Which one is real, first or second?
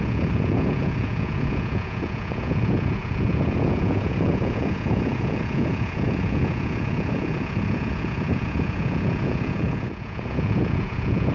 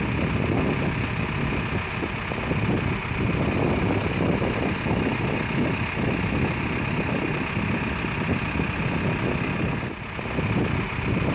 second